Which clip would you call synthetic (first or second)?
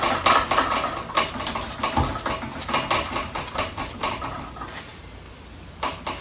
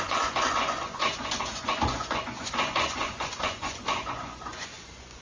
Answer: second